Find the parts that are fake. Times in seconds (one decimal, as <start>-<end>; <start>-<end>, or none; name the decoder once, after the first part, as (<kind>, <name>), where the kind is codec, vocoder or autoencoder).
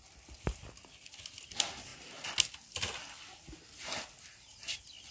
none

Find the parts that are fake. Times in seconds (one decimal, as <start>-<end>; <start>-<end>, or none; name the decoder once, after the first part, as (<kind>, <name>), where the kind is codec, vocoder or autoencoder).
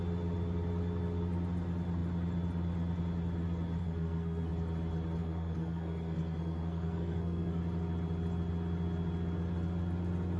3.8-4.5 (codec, SNAC); 5.2-7.6